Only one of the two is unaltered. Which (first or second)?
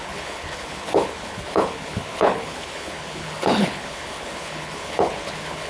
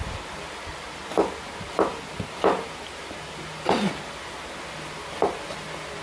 second